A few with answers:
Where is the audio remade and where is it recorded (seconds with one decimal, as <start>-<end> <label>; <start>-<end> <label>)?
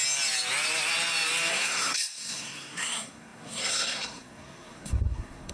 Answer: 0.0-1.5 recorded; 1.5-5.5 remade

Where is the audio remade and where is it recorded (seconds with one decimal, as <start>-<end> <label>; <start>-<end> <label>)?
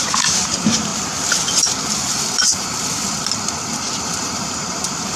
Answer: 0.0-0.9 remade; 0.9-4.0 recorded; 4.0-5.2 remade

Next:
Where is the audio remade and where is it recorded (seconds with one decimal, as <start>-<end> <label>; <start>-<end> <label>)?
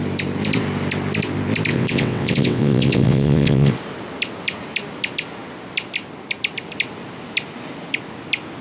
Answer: 0.0-1.7 recorded; 1.7-3.7 remade; 3.7-8.6 recorded